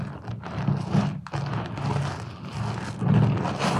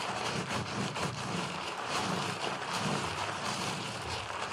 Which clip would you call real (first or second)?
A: first